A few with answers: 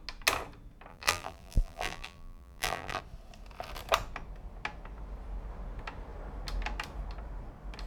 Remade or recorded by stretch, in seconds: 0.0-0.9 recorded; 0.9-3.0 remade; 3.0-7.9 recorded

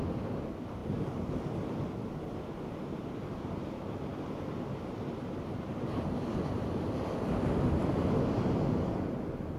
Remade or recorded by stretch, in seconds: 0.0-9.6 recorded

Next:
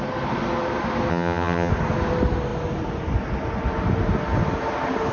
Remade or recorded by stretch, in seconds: 0.0-1.1 recorded; 1.1-1.7 remade; 1.7-5.1 recorded